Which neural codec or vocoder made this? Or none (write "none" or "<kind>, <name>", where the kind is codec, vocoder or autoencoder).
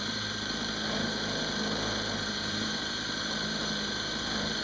vocoder, BigVGAN v2